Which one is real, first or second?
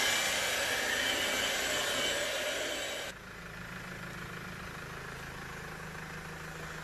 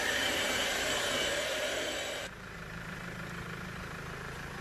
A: first